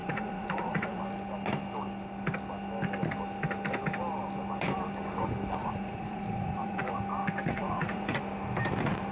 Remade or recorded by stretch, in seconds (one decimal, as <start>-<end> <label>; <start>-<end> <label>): 0.0-1.0 remade; 1.0-5.6 recorded; 5.6-6.9 remade; 6.9-7.5 recorded; 7.5-8.2 remade; 8.2-9.1 recorded